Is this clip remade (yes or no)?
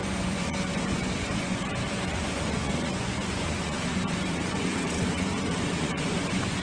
yes